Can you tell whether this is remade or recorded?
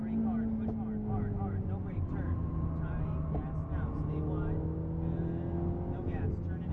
recorded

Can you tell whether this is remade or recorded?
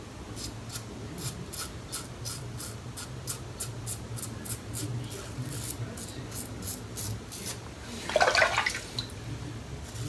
recorded